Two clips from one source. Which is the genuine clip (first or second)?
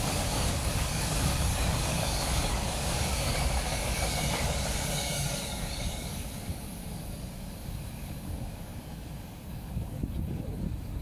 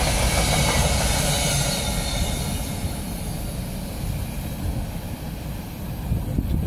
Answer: second